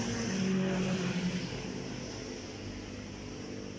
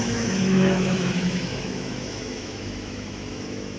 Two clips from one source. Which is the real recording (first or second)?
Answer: first